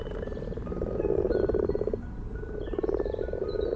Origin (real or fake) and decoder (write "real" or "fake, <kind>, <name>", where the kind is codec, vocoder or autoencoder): fake, vocoder, BigVGAN v2